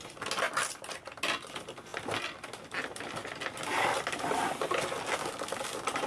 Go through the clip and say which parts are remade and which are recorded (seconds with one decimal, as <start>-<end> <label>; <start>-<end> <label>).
0.0-6.1 recorded